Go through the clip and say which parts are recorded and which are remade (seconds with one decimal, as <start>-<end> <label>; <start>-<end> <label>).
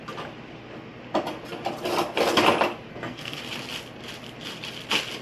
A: 0.0-2.9 recorded; 2.9-3.4 remade; 3.4-5.2 recorded